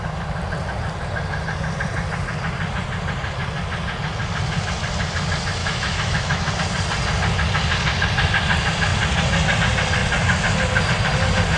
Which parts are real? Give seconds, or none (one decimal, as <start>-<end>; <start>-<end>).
0.0-5.6; 6.5-11.6